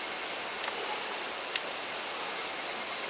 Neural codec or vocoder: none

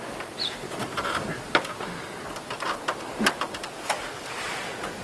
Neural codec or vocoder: none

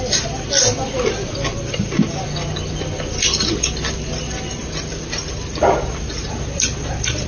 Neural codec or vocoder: vocoder, BigVGAN v2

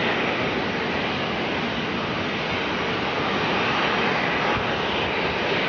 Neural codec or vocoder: none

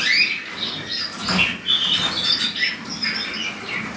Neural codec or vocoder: none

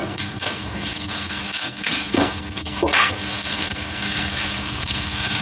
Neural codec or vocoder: codec, SNAC